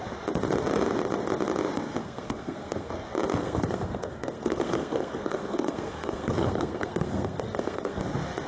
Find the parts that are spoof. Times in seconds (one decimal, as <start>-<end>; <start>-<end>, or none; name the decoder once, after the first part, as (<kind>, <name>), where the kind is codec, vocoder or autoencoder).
2.0-2.9 (codec, SNAC); 3.4-8.0